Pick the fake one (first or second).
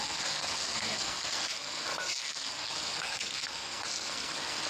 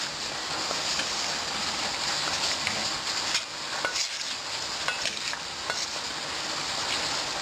first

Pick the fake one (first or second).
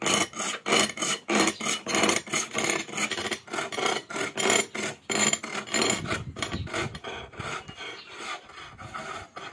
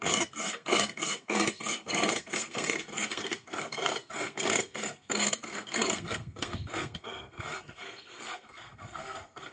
second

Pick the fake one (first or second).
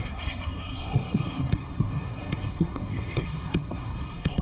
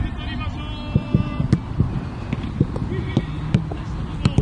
first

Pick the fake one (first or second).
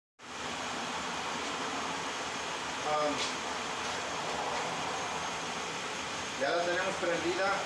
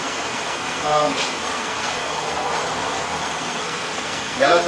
second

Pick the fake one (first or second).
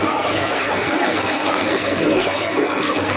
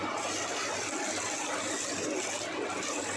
first